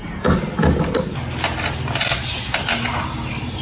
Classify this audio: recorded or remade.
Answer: recorded